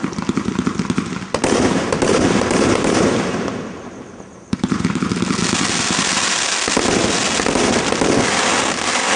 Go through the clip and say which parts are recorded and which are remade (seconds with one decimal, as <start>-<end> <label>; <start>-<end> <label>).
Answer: 0.0-2.1 recorded; 2.1-5.0 remade; 5.0-9.2 recorded